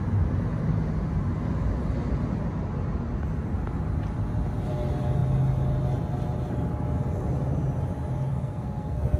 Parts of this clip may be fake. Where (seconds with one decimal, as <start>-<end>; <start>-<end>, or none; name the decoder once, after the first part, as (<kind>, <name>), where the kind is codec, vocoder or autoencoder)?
8.3-9.2 (codec, SNAC)